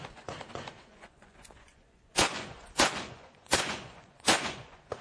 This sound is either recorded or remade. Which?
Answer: remade